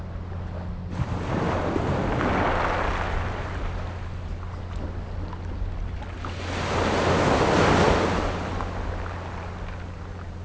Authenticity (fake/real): real